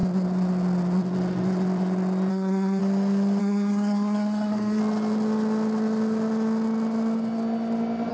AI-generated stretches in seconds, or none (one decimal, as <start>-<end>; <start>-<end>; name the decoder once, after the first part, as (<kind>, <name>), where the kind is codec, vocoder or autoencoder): 2.3-2.8 (codec, SNAC); 3.4-4.8